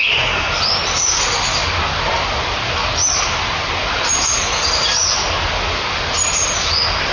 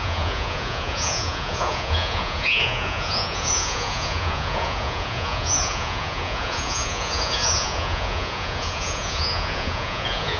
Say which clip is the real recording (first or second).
first